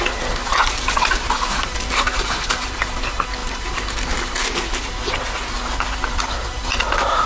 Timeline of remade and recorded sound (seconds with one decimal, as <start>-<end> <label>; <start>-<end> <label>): 0.0-7.3 recorded